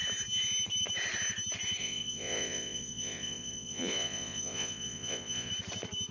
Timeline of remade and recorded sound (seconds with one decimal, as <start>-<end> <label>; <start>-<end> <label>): 0.0-1.8 recorded; 1.8-5.5 remade; 5.5-6.1 recorded